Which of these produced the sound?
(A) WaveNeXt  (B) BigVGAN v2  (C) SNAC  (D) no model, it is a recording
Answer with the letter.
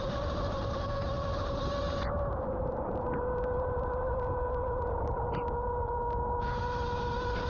B